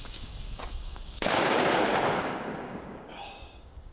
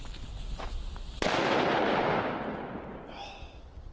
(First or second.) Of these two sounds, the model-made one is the first